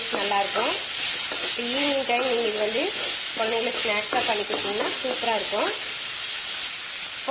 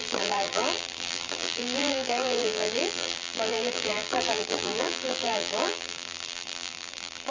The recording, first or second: first